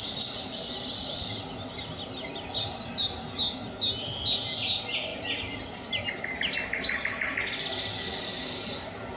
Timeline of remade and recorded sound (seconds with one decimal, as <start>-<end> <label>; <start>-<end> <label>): 0.0-9.2 recorded